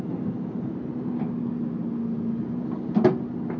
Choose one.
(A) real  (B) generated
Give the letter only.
A